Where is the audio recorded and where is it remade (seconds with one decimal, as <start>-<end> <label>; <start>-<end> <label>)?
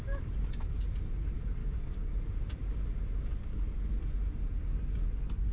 0.0-1.6 recorded; 1.6-2.2 remade; 2.2-5.5 recorded